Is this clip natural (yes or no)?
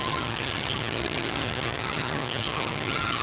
no